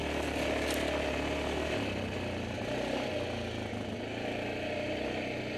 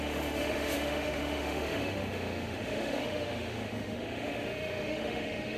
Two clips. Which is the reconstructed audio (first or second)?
second